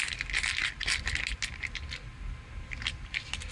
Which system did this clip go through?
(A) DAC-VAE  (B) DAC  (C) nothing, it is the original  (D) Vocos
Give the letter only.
C